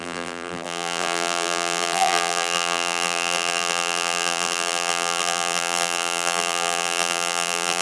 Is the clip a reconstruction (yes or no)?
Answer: yes